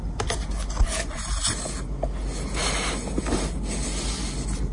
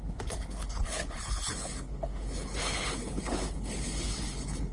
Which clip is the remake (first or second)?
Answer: second